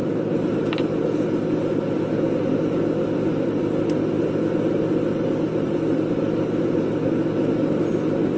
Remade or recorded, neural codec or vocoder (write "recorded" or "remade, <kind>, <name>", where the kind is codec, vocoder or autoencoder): recorded